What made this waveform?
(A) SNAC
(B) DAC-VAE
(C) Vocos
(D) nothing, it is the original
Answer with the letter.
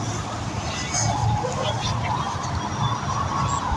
D